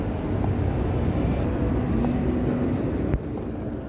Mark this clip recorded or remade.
recorded